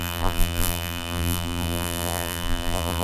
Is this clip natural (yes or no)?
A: no